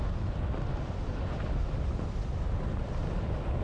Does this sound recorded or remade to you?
recorded